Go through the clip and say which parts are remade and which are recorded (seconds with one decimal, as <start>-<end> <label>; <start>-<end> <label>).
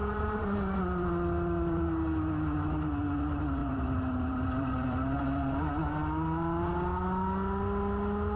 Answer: 0.0-0.8 remade; 0.8-3.6 recorded; 3.6-5.7 remade; 5.7-8.4 recorded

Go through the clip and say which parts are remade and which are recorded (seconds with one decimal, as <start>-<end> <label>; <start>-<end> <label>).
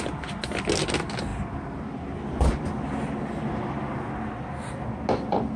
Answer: 0.0-5.6 recorded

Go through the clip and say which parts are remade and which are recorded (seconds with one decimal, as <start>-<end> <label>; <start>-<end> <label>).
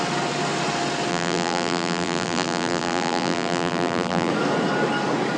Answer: 0.0-1.1 recorded; 1.1-4.3 remade; 4.3-5.4 recorded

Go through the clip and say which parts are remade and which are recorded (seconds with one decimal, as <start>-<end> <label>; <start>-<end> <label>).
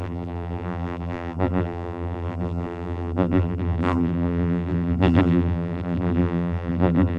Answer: 0.0-7.2 remade